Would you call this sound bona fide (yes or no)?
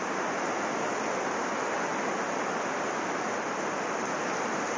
yes